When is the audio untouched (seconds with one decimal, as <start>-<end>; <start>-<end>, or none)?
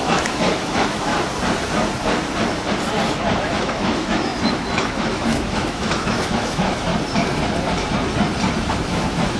1.1-3.4; 6.9-8.7